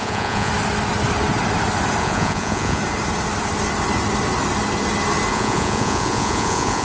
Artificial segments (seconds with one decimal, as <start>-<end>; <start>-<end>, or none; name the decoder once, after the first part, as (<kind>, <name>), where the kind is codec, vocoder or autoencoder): 0.0-0.5 (vocoder, Vocos); 2.0-2.8; 5.3-6.8